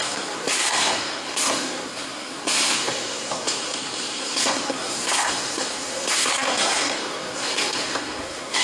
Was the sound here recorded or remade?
remade